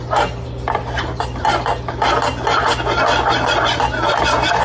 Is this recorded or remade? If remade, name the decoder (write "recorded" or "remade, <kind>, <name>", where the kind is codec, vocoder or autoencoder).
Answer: recorded